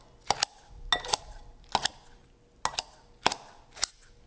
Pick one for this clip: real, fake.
real